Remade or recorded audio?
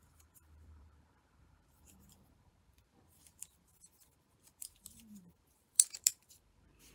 remade